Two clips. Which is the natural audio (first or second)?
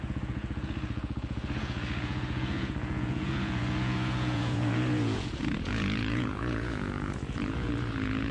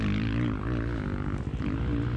second